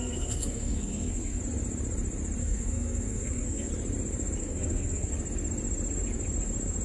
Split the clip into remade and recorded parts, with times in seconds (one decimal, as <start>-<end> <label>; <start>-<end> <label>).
0.0-1.4 remade; 1.4-2.4 recorded; 2.4-3.7 remade; 3.7-4.4 recorded; 4.4-5.1 remade; 5.1-6.8 recorded